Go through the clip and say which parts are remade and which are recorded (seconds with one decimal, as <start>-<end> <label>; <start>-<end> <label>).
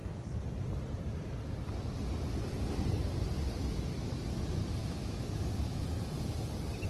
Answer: 0.0-4.8 recorded; 4.8-5.8 remade; 5.8-6.9 recorded